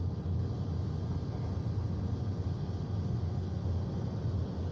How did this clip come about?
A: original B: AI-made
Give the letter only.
A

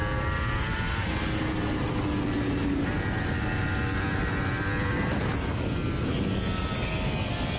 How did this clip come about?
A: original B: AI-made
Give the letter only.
A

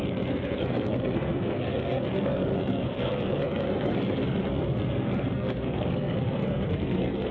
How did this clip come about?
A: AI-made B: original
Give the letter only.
A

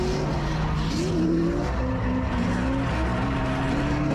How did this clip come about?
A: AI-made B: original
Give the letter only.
B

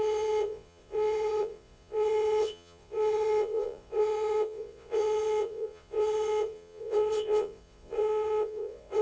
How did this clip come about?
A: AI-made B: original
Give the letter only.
A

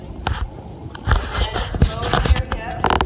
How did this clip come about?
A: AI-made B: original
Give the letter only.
B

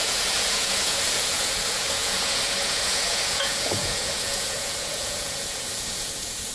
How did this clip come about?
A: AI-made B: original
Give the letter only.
A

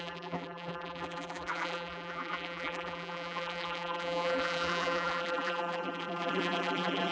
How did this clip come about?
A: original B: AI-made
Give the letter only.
B